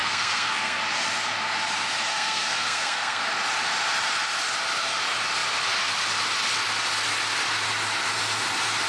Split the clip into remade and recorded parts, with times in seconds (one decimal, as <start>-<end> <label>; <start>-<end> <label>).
0.0-0.8 remade; 0.8-2.1 recorded; 2.1-3.2 remade; 3.2-8.9 recorded